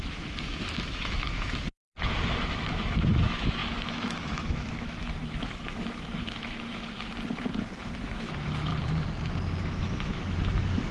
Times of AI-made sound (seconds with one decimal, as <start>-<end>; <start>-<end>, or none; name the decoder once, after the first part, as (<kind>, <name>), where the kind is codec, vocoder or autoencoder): 0.0-7.1 (autoencoder, DAC-VAE); 7.8-8.7; 9.6-10.9

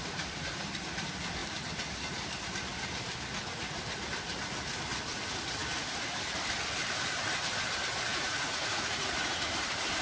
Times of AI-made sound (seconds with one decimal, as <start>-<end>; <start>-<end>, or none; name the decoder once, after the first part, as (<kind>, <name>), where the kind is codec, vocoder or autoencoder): 8.1-9.5 (vocoder, Vocos)

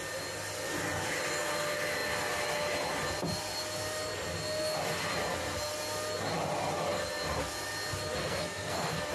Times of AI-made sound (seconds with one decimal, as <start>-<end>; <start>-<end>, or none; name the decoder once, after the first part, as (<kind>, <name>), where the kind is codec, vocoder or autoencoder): 8.2-9.1 (codec, SNAC)

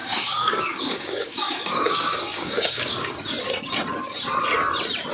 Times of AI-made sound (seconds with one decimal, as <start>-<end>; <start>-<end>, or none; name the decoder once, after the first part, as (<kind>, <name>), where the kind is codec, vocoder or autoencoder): 0.0-3.1 (codec, DAC)

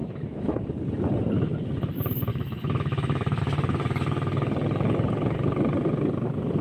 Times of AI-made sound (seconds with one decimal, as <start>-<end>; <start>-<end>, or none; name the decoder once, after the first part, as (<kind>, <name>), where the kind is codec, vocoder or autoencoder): 0.0-0.6 (autoencoder, DAC-VAE); 2.3-3.4

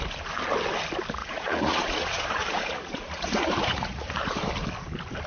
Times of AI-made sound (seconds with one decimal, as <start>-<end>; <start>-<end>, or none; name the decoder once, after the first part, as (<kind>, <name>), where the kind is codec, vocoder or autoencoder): 1.2-4.4 (vocoder, Vocos)

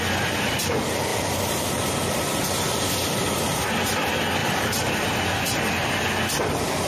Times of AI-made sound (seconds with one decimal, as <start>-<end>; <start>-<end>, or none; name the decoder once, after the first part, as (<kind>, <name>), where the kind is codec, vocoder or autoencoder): 1.1-3.7 (vocoder, BigVGAN v2); 4.4-4.9

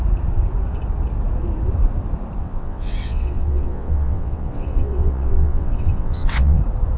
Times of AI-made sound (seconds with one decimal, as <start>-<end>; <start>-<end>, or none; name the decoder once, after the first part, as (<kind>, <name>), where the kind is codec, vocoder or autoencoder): 2.4-6.6 (vocoder, WaveNeXt)